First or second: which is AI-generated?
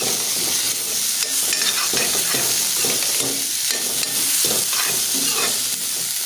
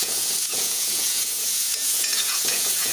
second